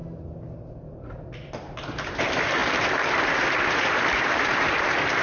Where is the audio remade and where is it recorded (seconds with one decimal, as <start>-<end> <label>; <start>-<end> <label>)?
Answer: 0.0-1.5 recorded; 1.5-5.2 remade